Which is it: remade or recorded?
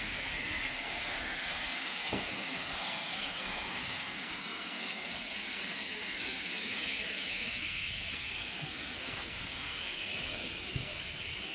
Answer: remade